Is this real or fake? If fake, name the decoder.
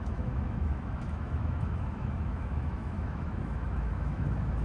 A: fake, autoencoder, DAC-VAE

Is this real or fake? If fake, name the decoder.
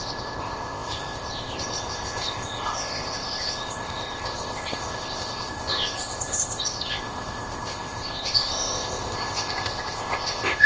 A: fake, codec, ZipCodec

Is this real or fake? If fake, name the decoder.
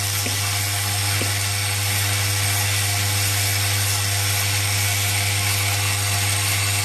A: real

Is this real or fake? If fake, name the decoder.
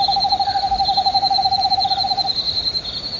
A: real